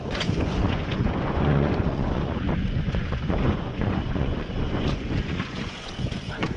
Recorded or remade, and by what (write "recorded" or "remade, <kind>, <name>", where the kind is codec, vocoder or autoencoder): remade, vocoder, Vocos